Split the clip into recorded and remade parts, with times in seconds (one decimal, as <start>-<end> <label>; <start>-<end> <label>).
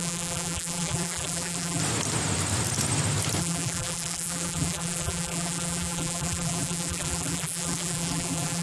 0.0-1.8 remade; 1.8-3.4 recorded; 3.4-8.6 remade